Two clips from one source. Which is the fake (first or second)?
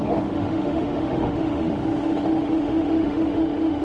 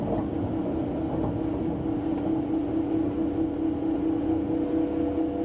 first